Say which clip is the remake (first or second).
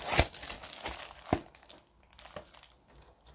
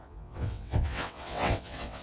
second